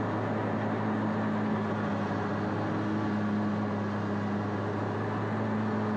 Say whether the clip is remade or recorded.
recorded